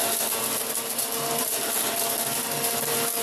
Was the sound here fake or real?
real